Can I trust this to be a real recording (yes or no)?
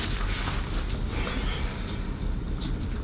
yes